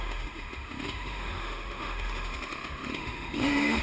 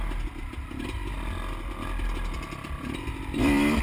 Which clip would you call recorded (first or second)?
second